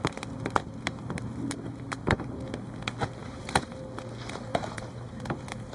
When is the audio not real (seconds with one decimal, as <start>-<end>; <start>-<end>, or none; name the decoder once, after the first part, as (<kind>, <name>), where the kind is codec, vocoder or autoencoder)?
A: 0.6-2.4 (vocoder, BigVGAN v2); 3.2-3.8; 4.5-5.7